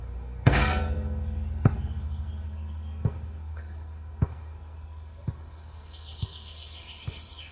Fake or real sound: fake